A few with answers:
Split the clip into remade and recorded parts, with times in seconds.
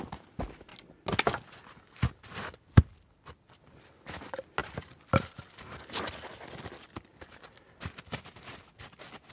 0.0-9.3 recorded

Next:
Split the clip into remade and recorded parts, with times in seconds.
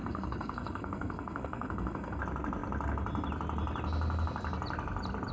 0.0-2.2 remade; 2.2-5.3 recorded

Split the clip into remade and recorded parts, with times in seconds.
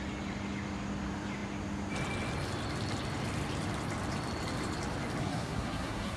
0.0-5.2 recorded; 5.2-6.2 remade